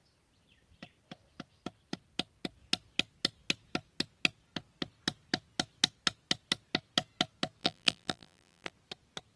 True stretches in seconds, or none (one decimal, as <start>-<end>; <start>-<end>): 0.0-7.6; 8.7-9.4